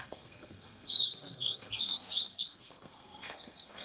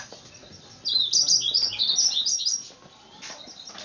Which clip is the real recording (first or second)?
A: second